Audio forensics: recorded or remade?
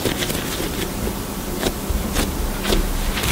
recorded